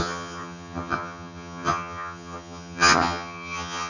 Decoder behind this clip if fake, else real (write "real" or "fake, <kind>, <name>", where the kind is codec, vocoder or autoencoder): fake, vocoder, HiFi-GAN